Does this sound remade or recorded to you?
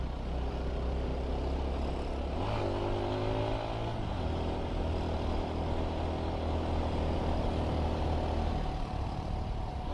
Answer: recorded